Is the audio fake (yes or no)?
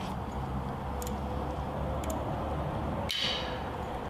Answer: no